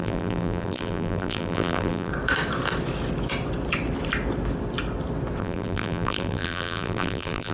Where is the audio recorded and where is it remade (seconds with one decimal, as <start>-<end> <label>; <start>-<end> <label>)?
0.0-2.1 remade; 2.1-5.4 recorded; 5.4-7.5 remade